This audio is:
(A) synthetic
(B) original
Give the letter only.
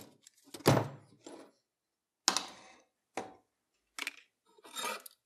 B